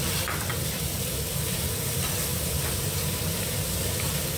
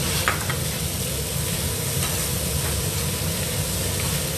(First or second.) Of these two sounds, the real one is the second